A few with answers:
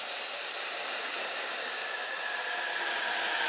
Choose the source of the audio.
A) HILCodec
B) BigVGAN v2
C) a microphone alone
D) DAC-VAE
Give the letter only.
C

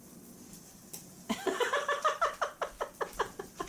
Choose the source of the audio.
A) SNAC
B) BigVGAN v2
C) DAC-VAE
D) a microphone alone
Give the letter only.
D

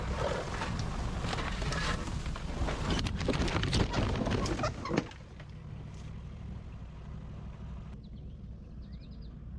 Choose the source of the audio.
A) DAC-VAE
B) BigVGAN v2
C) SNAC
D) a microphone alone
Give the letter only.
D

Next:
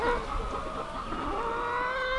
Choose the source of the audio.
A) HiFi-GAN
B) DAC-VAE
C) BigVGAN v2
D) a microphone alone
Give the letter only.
D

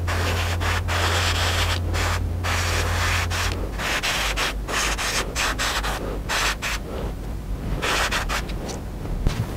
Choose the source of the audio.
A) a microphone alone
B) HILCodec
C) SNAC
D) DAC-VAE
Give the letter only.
A